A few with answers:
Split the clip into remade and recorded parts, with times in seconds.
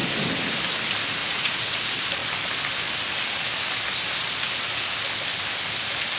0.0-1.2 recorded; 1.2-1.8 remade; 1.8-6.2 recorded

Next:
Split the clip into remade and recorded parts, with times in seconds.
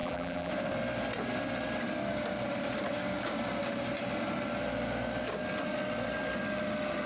0.0-0.5 remade; 0.5-7.1 recorded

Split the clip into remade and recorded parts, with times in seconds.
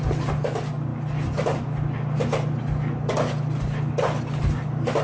0.0-5.0 recorded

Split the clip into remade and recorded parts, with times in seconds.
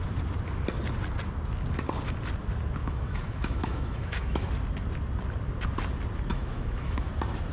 0.0-2.8 recorded; 2.8-4.5 remade; 4.5-6.3 recorded; 6.3-7.1 remade; 7.1-7.5 recorded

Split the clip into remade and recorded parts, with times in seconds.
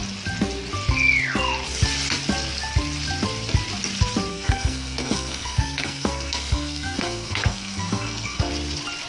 0.0-4.3 recorded; 4.3-8.5 remade; 8.5-9.1 recorded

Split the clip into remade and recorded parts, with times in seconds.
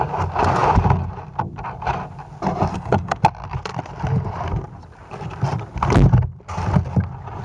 0.0-2.7 recorded; 2.7-3.2 remade; 3.2-7.4 recorded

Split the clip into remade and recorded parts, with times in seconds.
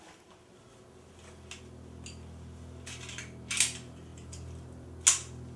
0.0-5.6 recorded